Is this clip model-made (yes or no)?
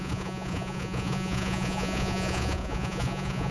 yes